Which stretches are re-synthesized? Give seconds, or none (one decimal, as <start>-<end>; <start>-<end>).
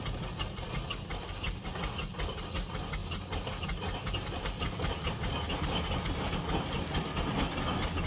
none